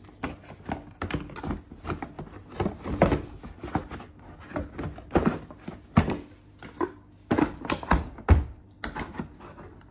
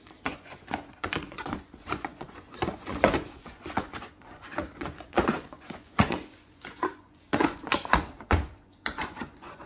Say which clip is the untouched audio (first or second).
first